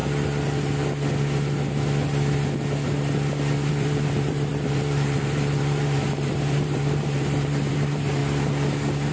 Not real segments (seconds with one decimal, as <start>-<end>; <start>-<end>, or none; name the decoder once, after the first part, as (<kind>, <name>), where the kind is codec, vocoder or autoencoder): 3.7-8.2 (vocoder, BigVGAN v2)